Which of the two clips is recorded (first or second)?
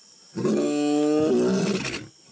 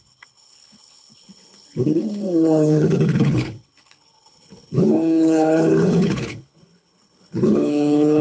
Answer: first